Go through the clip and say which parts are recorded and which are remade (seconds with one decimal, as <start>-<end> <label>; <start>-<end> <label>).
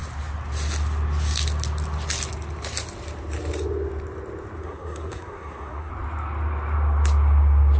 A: 0.0-4.6 recorded; 4.6-5.9 remade; 5.9-7.8 recorded